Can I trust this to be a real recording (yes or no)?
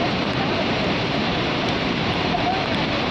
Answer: no